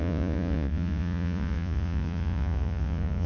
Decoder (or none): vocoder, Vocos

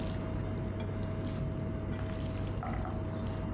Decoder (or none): none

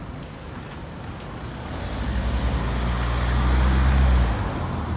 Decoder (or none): none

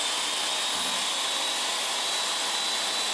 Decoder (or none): none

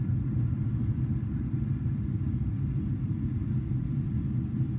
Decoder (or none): none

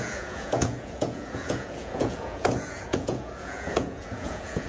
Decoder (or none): vocoder, Vocos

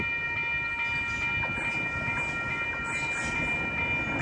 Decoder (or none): none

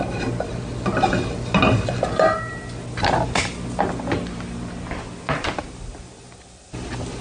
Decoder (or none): none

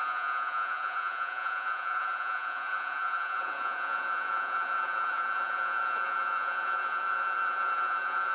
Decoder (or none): vocoder, Vocos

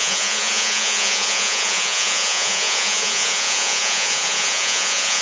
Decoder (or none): vocoder, Vocos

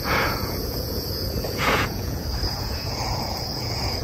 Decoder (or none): vocoder, Vocos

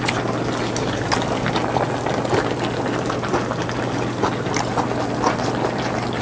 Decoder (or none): none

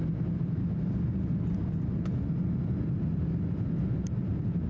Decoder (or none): none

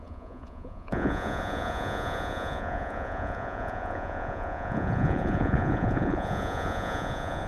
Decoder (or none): vocoder, Vocos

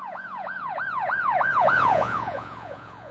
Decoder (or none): vocoder, Vocos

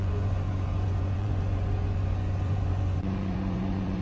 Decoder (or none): vocoder, Vocos